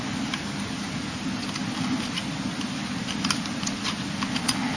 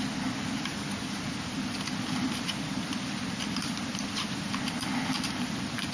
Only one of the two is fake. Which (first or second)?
second